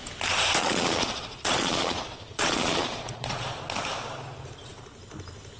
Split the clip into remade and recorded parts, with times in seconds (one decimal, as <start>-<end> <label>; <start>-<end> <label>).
0.0-0.6 recorded; 0.6-3.6 remade; 3.6-5.6 recorded